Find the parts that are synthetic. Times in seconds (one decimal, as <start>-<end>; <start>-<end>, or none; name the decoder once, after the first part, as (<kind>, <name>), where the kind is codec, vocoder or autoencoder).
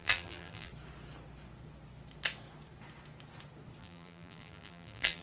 0.0-0.7 (vocoder, BigVGAN v2); 3.8-5.2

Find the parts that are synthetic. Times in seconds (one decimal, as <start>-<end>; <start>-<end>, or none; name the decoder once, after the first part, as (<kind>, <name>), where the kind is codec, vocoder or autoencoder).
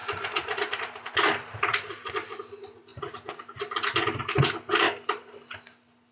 0.0-1.1 (vocoder, BigVGAN v2); 1.7-2.4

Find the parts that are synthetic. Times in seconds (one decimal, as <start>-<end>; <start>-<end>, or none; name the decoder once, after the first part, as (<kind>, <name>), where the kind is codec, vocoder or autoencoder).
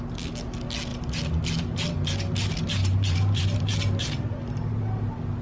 2.8-4.5 (vocoder, BigVGAN v2)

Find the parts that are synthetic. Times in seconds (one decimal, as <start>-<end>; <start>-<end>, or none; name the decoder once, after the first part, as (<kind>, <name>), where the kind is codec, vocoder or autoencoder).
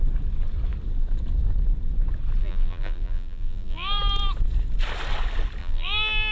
2.4-4.0 (vocoder, BigVGAN v2); 5.6-6.3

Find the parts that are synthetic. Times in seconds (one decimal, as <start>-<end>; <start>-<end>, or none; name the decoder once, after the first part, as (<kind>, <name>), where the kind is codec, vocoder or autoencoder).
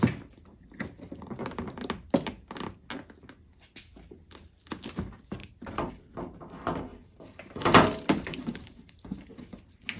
5.4-5.9 (vocoder, BigVGAN v2); 6.9-9.6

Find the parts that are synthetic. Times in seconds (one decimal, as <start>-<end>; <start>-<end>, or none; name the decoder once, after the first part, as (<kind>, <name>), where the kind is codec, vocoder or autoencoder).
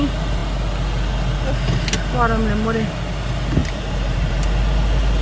3.6-4.3 (vocoder, BigVGAN v2)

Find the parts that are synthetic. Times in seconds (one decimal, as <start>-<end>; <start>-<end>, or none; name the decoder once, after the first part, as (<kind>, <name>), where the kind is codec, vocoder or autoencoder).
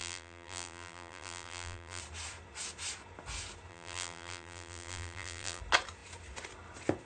0.0-2.0 (vocoder, BigVGAN v2); 3.7-5.6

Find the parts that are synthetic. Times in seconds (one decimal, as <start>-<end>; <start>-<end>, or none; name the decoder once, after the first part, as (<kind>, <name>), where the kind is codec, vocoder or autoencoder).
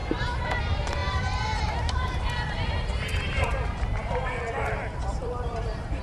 1.0-4.4 (vocoder, BigVGAN v2); 5.2-6.0